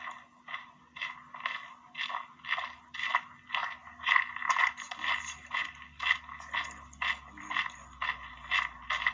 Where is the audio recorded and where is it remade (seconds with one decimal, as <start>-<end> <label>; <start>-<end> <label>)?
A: 0.0-9.1 recorded